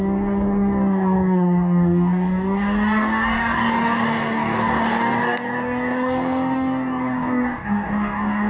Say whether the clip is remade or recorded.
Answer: remade